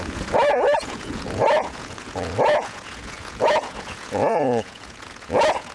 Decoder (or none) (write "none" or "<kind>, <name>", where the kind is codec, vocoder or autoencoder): vocoder, Vocos